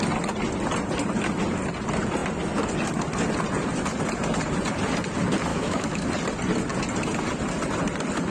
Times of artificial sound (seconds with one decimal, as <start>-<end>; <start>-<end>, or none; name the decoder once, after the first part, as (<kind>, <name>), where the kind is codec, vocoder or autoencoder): 5.5-6.1 (autoencoder, DAC-VAE)